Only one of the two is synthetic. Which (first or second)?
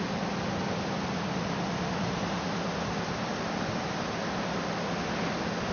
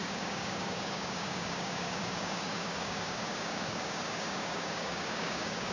second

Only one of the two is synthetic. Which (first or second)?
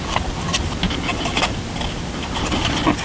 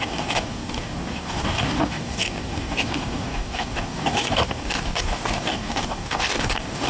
second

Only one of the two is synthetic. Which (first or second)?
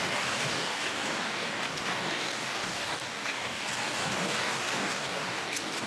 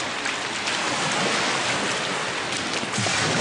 first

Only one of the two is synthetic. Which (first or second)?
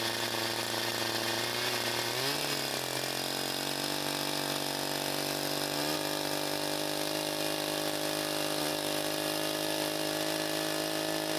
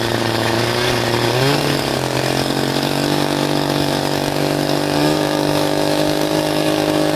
second